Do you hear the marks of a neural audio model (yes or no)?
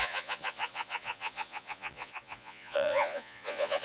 yes